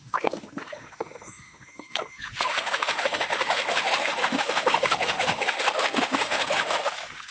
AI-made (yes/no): yes